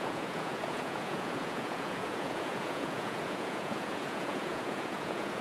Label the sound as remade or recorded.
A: remade